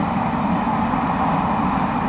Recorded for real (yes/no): yes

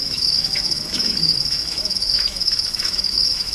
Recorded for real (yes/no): no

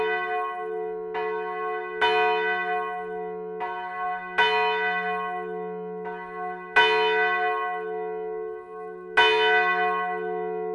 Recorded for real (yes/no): yes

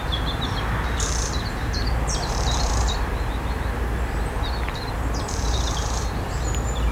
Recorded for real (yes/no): no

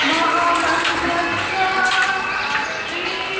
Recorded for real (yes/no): yes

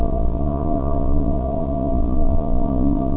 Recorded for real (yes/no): no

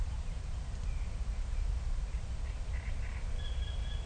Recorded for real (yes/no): yes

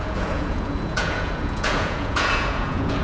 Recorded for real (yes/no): no